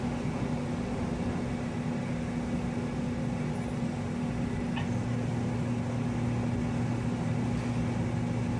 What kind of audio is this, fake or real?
real